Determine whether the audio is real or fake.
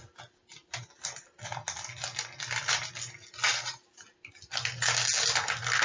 real